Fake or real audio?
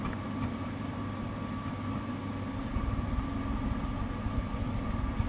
real